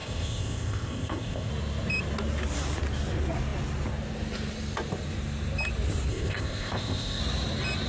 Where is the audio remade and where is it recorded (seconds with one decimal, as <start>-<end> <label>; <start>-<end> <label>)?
0.0-1.5 remade; 1.5-6.1 recorded; 6.1-7.2 remade; 7.2-7.9 recorded